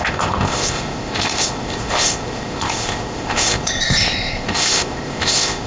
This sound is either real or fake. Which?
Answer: fake